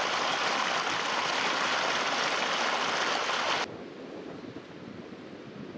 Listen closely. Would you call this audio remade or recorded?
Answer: recorded